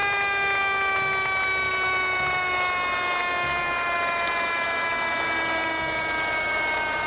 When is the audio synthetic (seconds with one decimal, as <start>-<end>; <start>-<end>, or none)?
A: none